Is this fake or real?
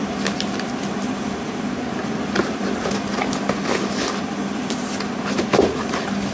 real